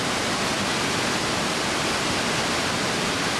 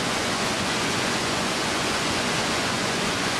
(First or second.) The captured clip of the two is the first